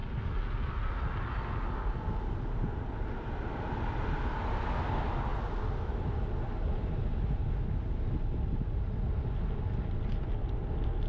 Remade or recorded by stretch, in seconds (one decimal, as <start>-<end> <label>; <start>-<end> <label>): 0.0-11.1 recorded